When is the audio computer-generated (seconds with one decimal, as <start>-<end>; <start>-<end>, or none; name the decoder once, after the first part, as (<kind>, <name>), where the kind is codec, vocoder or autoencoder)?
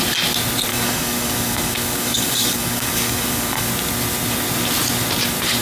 0.7-3.7 (codec, DAC)